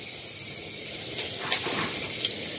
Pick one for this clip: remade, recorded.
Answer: recorded